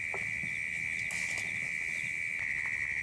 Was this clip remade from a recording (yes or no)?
no